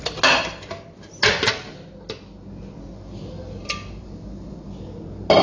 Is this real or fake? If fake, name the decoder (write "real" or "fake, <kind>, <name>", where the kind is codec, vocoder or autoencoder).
real